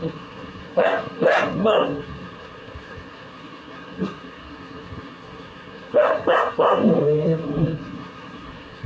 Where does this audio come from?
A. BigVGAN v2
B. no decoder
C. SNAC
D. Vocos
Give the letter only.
C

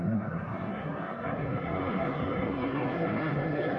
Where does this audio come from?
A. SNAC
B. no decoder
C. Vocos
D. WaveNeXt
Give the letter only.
A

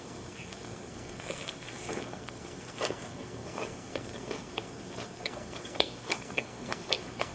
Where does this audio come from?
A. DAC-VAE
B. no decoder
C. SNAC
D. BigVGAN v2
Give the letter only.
C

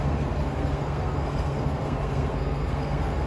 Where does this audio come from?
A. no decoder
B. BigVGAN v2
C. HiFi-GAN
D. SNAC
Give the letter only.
D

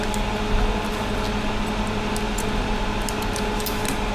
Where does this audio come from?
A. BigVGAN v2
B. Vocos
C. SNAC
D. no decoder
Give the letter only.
D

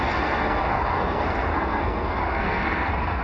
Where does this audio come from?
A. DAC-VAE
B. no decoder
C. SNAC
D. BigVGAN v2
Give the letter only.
C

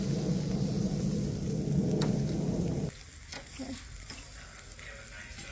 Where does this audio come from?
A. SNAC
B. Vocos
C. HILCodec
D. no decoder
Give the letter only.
D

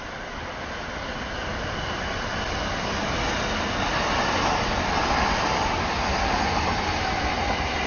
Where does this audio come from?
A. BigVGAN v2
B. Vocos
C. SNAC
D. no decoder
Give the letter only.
D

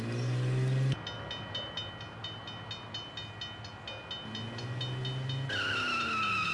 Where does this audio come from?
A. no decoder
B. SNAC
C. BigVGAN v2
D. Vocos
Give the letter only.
A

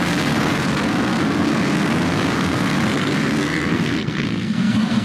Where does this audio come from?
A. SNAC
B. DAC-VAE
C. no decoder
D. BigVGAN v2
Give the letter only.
A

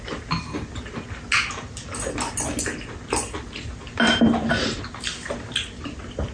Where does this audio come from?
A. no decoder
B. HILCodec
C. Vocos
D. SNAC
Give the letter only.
A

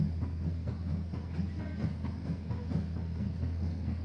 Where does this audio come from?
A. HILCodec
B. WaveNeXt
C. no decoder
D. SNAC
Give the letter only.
D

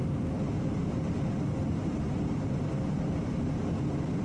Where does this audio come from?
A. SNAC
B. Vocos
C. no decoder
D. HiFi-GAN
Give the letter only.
C